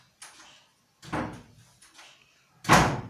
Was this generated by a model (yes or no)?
no